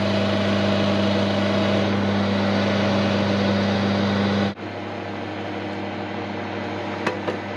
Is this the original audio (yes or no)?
yes